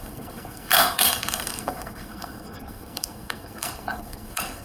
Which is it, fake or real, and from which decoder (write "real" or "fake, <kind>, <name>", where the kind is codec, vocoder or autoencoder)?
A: fake, codec, SNAC